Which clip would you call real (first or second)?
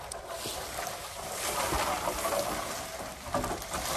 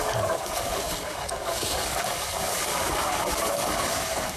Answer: first